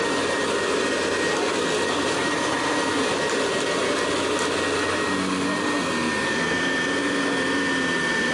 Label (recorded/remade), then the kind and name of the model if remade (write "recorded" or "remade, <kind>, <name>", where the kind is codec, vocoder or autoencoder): recorded